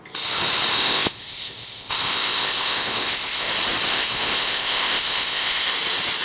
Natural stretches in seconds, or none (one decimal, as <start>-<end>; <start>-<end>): 0.0-0.7; 3.5-3.9; 5.7-6.2